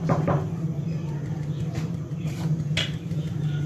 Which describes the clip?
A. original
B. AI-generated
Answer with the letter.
A